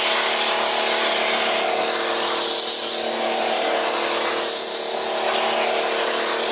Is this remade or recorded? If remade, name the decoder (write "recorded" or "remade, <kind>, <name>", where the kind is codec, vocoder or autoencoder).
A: recorded